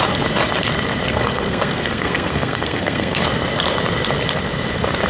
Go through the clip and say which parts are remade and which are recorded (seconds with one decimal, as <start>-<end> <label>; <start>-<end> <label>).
0.0-1.1 recorded; 1.1-3.2 remade; 3.2-5.1 recorded